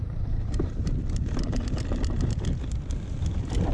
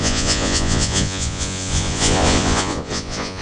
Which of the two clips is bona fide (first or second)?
first